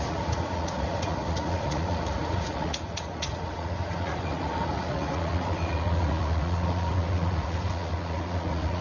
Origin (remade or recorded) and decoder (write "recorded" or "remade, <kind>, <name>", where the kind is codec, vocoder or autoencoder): remade, vocoder, Vocos